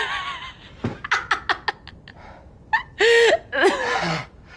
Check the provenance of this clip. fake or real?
real